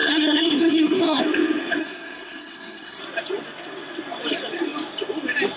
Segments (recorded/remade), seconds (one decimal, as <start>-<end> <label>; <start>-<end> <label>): 0.0-1.2 remade; 1.2-1.8 recorded; 1.8-3.0 remade; 3.0-5.6 recorded